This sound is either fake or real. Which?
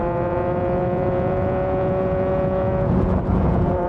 fake